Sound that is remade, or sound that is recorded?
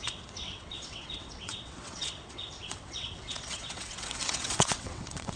remade